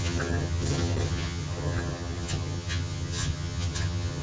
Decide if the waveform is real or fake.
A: fake